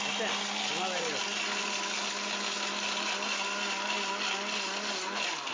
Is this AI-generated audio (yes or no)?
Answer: no